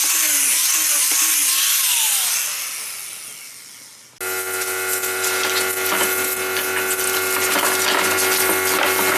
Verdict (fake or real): real